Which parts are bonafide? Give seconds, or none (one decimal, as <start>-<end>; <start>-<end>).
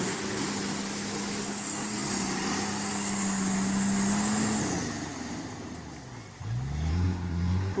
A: 0.0-6.9